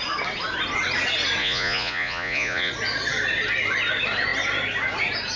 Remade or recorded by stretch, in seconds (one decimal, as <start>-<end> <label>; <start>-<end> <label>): 0.0-1.4 recorded; 1.4-2.7 remade; 2.7-5.4 recorded